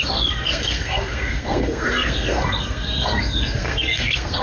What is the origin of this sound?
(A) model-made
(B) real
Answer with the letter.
A